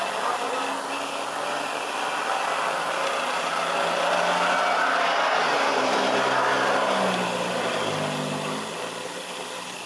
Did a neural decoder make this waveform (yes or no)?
no